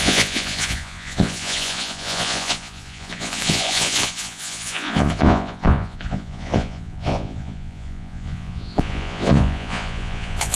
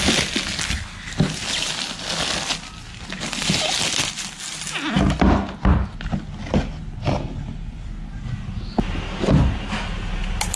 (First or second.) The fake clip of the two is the first